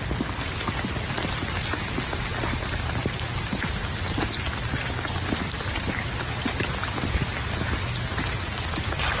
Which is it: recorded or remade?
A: recorded